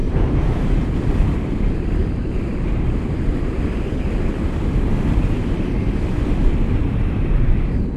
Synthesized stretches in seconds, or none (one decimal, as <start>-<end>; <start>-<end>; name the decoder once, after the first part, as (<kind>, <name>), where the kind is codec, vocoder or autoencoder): 0.0-1.6 (vocoder, BigVGAN v2); 2.0-6.8

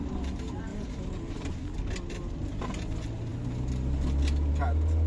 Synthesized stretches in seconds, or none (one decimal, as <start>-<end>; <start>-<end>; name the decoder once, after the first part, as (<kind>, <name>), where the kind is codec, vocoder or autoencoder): 0.7-1.5 (vocoder, BigVGAN v2)